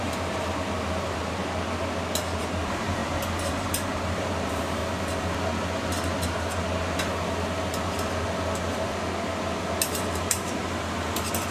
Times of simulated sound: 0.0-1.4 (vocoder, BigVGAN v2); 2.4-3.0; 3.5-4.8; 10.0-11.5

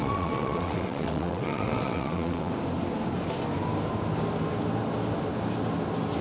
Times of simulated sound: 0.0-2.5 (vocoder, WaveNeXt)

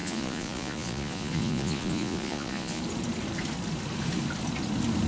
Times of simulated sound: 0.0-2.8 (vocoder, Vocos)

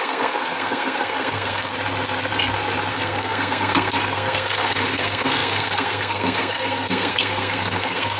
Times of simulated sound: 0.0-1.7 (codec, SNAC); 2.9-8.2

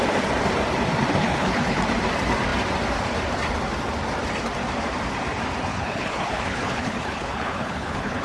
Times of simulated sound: 1.2-1.8 (codec, HILCodec); 5.7-8.2

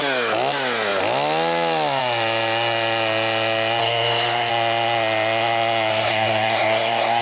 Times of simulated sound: 3.8-4.5 (codec, SNAC); 5.9-7.2

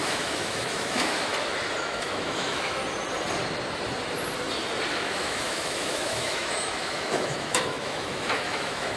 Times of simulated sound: 0.0-1.3 (autoencoder, DAC-VAE); 1.8-2.8; 4.9-9.0